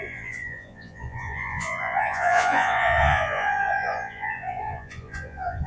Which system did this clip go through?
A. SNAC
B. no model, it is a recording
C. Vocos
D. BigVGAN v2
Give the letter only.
C